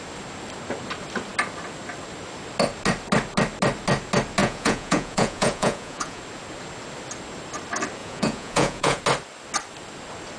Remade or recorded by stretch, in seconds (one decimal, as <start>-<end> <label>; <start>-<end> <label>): 0.0-4.4 recorded; 4.4-6.2 remade; 6.2-8.0 recorded; 8.0-9.0 remade; 9.0-10.4 recorded